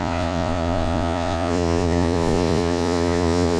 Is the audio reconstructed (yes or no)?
yes